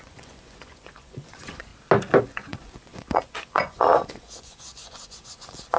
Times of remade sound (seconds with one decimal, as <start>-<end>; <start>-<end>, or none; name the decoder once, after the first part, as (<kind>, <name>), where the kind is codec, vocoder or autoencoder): 0.0-1.7 (vocoder, Vocos); 2.2-5.8